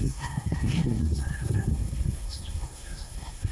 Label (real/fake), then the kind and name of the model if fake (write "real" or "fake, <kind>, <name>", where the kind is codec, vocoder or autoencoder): fake, codec, SNAC